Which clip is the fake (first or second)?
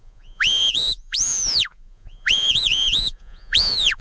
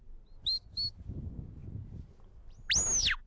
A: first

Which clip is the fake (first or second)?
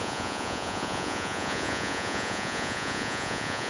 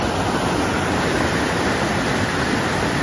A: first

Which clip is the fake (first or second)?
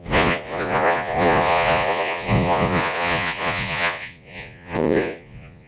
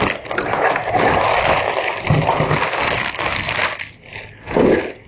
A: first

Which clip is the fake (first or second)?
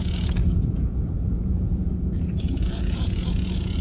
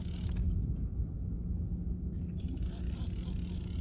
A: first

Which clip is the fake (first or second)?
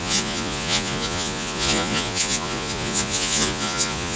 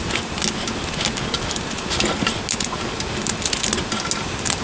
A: first